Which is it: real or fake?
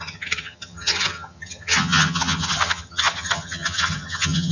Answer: fake